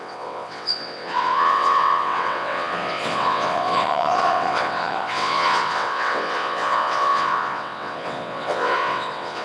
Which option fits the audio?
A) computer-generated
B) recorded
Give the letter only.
A